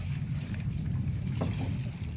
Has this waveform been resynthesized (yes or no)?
no